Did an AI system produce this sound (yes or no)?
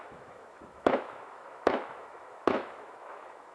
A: yes